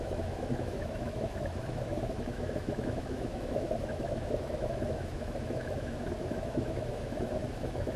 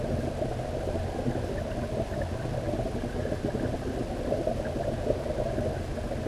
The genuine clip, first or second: second